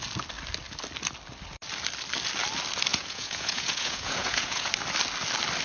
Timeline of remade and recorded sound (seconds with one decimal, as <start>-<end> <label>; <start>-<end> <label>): 0.0-2.9 recorded; 2.9-4.7 remade; 4.7-5.6 recorded